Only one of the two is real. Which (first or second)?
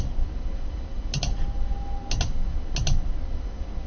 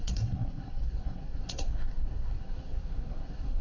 first